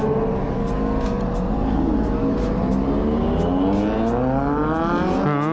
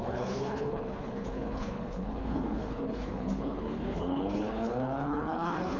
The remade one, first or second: second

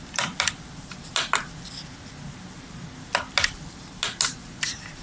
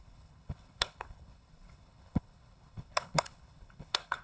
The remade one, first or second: second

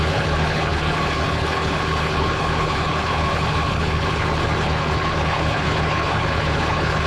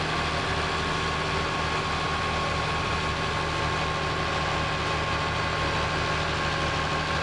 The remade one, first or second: first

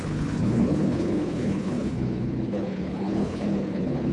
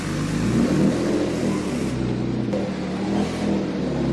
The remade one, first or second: first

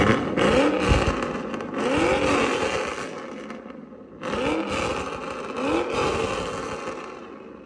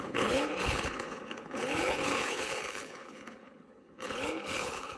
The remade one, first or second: second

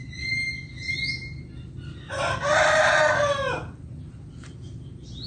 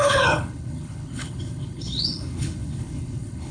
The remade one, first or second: second